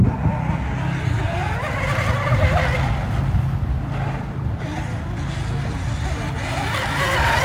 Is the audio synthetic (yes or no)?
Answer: no